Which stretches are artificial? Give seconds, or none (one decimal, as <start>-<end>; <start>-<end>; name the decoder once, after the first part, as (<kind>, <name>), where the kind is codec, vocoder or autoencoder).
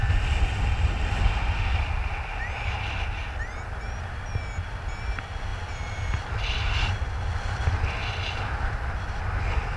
none